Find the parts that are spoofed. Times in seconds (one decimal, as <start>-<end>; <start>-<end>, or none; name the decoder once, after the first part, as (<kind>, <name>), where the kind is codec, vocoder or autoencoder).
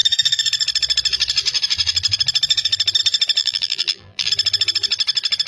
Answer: 3.4-4.3 (vocoder, BigVGAN v2)